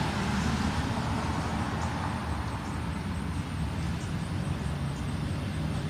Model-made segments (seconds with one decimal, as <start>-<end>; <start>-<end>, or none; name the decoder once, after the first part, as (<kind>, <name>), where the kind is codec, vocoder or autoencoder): none